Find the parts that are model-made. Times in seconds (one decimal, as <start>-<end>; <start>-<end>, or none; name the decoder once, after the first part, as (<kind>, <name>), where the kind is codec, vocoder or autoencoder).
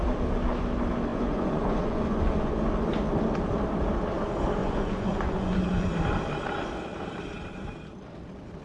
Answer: 1.1-2.5 (vocoder, Vocos); 4.6-5.9